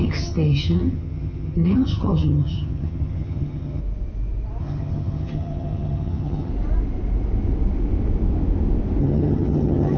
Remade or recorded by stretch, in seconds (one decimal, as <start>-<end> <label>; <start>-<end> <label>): 0.0-3.8 remade; 3.8-4.6 recorded; 4.6-6.5 remade; 6.5-9.0 recorded; 9.0-10.0 remade